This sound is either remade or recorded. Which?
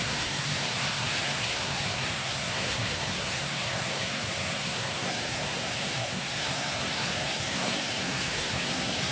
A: remade